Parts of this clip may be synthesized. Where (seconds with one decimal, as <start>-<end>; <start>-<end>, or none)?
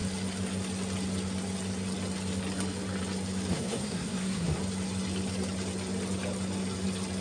3.5-4.6